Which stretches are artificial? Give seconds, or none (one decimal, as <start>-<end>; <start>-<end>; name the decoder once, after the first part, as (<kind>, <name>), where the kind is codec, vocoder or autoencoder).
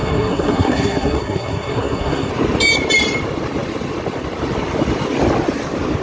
0.0-2.3 (codec, SNAC)